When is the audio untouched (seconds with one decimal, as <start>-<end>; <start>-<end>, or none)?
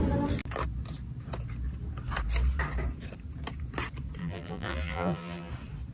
0.0-4.2; 5.5-5.9